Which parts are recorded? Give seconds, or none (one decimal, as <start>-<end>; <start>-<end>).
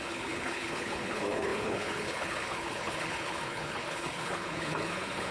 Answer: none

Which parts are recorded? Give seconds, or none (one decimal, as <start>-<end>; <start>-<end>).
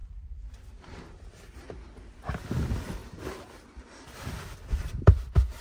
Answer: none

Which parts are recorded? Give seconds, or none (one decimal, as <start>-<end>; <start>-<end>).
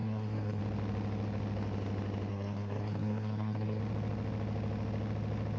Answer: 0.6-2.3; 3.8-5.6